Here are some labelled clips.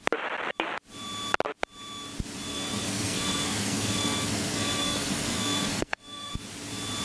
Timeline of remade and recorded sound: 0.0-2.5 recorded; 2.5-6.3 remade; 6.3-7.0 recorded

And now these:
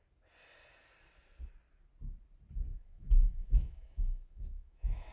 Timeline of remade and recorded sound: 0.0-2.7 recorded; 2.7-5.1 remade

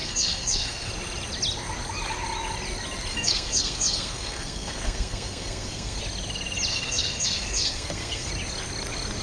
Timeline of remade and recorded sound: 0.0-0.9 remade; 0.9-3.1 recorded; 3.1-6.0 remade; 6.0-6.7 recorded; 6.7-8.3 remade; 8.3-9.2 recorded